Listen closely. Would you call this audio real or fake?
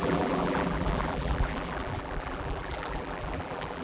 fake